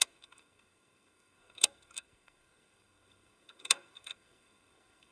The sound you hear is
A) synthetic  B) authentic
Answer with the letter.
A